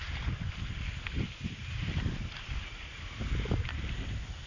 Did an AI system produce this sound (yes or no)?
no